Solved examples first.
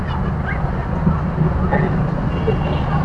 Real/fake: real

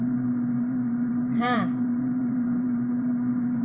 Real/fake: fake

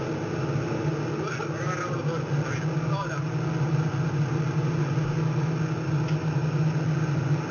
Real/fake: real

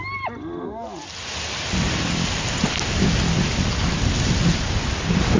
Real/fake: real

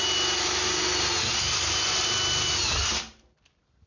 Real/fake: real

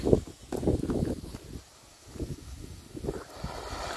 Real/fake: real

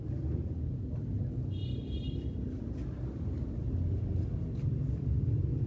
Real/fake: real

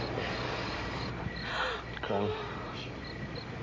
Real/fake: real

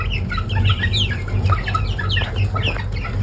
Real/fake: real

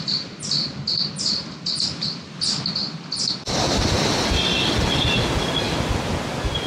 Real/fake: real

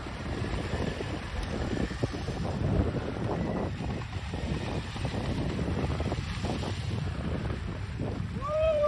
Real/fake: fake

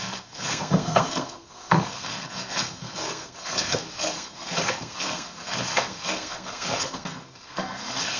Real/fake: fake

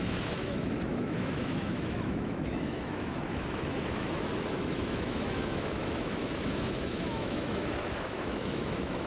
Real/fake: fake